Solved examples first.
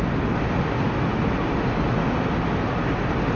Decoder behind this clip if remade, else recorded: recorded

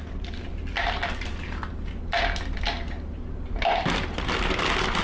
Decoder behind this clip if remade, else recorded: recorded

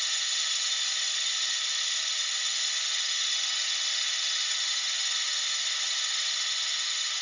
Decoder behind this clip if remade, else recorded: recorded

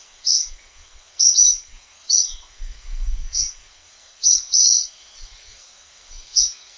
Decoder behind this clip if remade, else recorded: remade, codec, SNAC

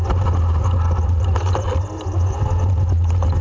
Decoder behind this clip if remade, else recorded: recorded